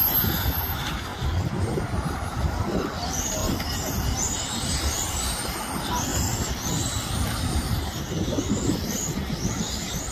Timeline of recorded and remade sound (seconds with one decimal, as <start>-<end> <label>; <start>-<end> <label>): 0.0-1.1 remade; 1.1-1.6 recorded; 1.6-10.1 remade